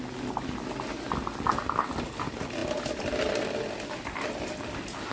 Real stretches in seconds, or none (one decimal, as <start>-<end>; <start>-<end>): 0.0-5.1